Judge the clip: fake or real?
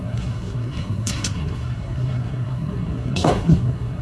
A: fake